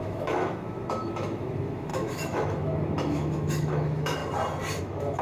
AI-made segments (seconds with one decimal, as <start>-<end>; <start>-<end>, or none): 0.0-4.2; 4.8-5.2